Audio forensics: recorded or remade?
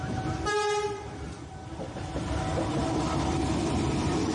recorded